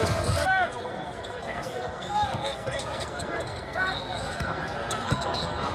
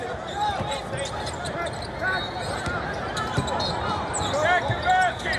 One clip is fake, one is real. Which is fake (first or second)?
first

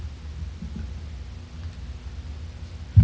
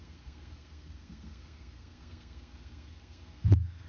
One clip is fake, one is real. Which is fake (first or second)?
second